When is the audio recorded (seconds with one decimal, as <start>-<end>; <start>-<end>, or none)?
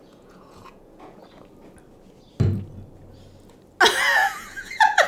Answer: 1.2-4.0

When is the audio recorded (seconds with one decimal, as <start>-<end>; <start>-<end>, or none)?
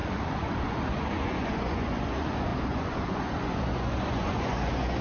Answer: none